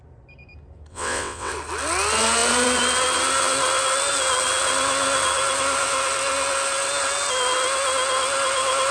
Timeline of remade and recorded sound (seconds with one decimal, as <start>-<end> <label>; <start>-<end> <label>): 0.0-0.9 recorded; 0.9-1.5 remade; 1.5-8.9 recorded